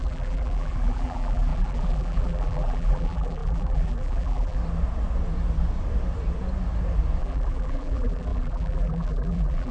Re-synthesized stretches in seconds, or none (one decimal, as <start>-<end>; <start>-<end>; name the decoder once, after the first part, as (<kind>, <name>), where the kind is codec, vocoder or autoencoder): 0.0-4.6 (vocoder, BigVGAN v2); 7.2-9.7